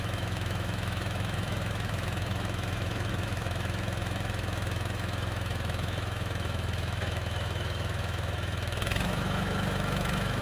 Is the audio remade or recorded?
remade